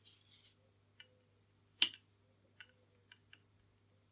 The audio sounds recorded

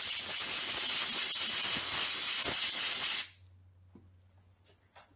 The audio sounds recorded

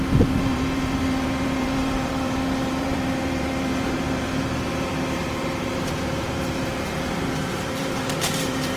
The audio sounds remade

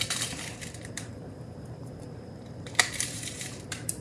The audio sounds remade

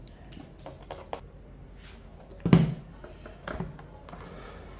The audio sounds recorded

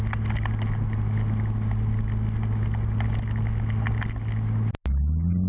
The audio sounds recorded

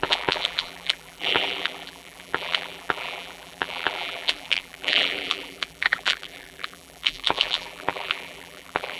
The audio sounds remade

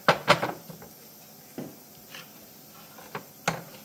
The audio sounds recorded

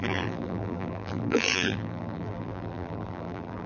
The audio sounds remade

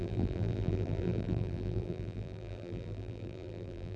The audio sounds remade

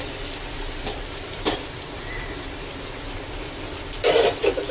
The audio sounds remade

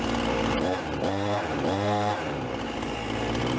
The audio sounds remade